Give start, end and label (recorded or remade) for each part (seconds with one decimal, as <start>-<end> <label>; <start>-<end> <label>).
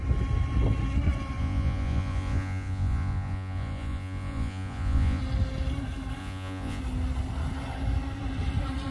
0.0-1.4 recorded; 1.4-5.2 remade; 5.2-6.2 recorded; 6.2-6.8 remade; 6.8-8.9 recorded